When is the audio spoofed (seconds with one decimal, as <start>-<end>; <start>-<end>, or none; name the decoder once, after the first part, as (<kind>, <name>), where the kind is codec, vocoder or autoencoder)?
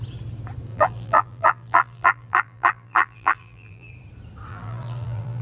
0.7-3.9 (vocoder, BigVGAN v2); 4.5-5.4